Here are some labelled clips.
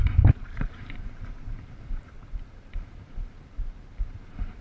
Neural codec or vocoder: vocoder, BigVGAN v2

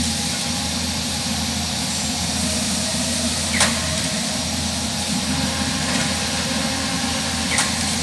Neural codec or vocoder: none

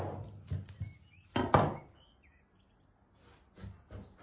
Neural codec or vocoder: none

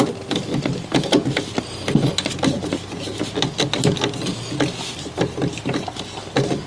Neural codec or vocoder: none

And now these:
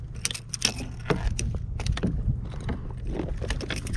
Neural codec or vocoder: none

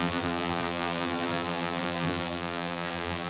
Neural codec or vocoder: vocoder, BigVGAN v2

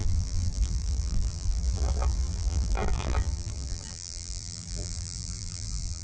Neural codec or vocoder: vocoder, BigVGAN v2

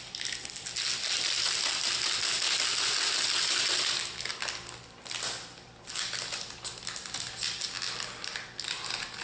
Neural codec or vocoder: none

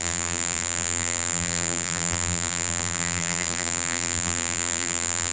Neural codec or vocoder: vocoder, BigVGAN v2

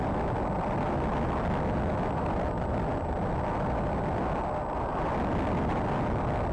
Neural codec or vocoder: none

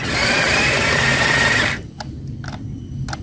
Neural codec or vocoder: none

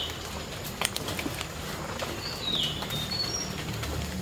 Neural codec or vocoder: vocoder, BigVGAN v2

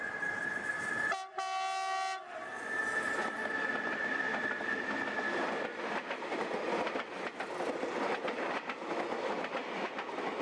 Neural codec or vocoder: none